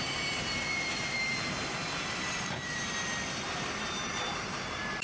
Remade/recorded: remade